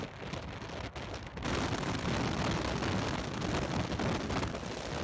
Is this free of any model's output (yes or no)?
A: yes